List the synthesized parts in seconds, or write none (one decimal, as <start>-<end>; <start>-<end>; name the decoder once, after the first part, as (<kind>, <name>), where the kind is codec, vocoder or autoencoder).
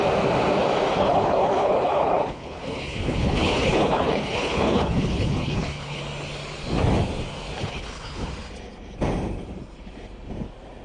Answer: 0.9-6.0 (codec, HILCodec); 7.6-8.3